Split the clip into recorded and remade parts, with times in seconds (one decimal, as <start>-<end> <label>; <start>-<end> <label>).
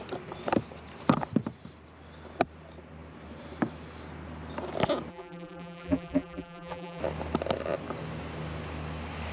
0.0-5.1 recorded; 5.1-7.0 remade; 7.0-9.3 recorded